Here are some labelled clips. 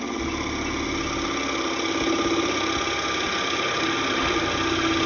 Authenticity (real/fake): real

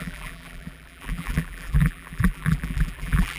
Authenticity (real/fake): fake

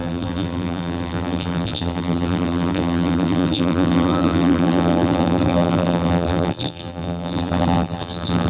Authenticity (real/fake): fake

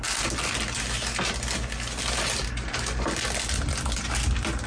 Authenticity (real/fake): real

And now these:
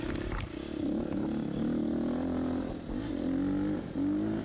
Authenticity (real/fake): real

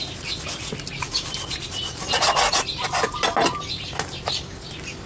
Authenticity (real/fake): real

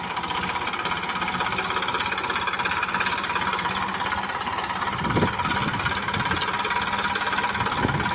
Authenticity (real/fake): real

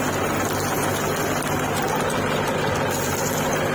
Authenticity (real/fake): real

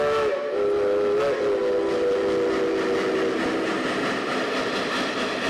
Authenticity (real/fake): real